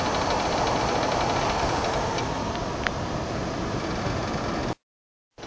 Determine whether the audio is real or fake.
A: real